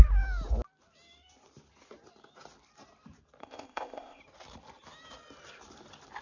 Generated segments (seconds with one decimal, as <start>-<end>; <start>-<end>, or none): 3.4-4.2